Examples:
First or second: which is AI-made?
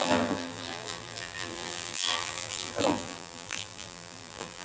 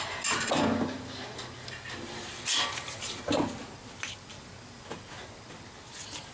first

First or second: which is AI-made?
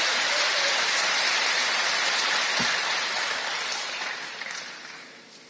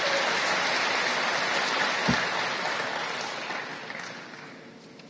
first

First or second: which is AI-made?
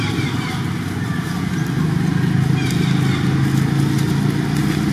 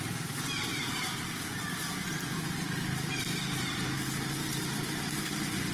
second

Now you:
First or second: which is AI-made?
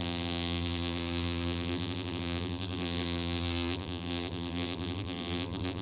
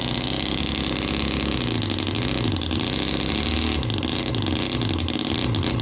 first